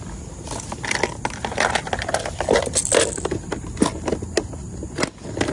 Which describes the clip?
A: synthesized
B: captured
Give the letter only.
B